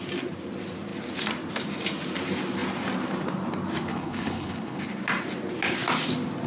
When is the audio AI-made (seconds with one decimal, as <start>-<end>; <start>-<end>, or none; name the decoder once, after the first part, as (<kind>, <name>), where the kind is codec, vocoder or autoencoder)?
3.9-4.8 (codec, HILCodec)